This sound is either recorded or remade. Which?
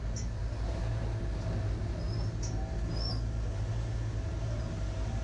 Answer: recorded